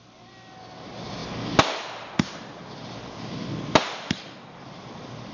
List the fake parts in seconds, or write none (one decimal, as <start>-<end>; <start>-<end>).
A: none